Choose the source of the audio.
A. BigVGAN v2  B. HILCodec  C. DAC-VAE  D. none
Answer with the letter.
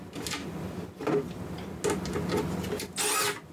D